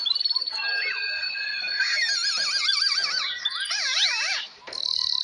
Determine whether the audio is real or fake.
real